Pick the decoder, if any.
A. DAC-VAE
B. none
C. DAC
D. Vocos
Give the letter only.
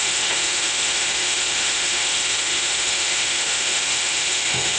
A